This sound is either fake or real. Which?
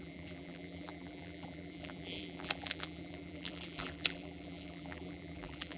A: fake